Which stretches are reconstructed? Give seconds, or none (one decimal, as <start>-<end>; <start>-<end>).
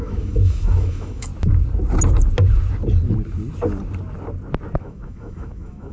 0.0-1.3; 4.8-5.9